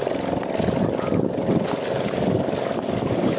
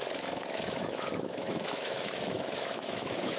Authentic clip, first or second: first